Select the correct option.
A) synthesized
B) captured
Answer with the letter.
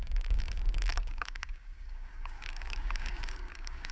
A